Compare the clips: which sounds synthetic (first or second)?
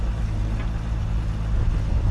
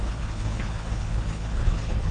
second